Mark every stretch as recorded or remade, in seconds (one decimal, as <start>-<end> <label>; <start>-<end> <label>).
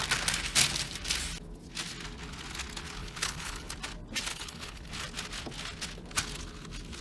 0.0-3.0 recorded; 3.0-3.7 remade; 3.7-4.3 recorded; 4.3-4.9 remade; 4.9-7.0 recorded